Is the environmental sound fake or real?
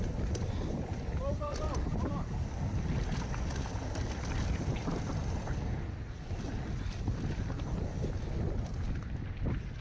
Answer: real